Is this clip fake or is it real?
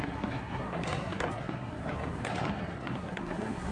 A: fake